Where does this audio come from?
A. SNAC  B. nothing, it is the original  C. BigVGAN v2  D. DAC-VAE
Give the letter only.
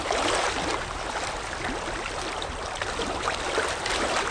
C